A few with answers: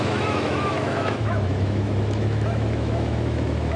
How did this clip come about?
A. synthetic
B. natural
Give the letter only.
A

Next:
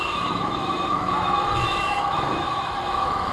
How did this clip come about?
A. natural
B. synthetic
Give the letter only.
B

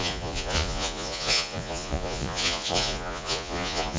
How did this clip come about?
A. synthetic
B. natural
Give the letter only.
A